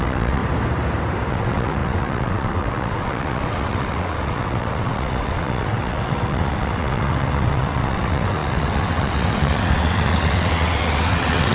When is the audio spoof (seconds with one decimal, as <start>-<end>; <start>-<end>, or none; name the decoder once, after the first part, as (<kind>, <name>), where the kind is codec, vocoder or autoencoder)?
0.0-0.4 (vocoder, WaveNeXt); 1.3-11.5